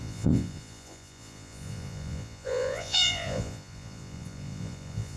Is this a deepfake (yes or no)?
yes